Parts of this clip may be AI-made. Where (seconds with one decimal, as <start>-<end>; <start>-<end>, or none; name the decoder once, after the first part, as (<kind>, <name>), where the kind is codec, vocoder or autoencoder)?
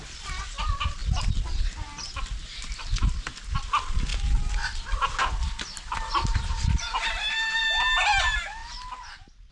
none